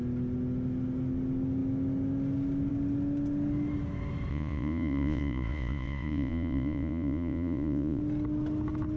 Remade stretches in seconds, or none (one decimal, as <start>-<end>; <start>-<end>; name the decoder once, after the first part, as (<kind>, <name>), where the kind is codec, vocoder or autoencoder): 4.3-8.0 (vocoder, Vocos)